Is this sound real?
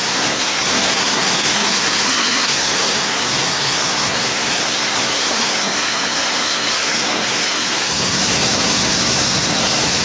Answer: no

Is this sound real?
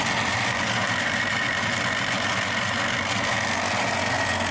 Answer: yes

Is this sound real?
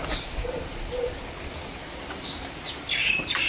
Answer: yes